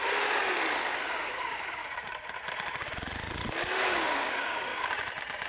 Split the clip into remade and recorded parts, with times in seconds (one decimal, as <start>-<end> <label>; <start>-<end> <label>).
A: 0.0-1.0 recorded; 1.0-1.8 remade; 1.8-3.8 recorded; 3.8-4.7 remade; 4.7-5.5 recorded